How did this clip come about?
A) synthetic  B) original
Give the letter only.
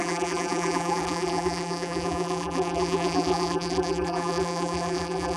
A